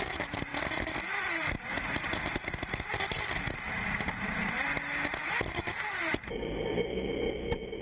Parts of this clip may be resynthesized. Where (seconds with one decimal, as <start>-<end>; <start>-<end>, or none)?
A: none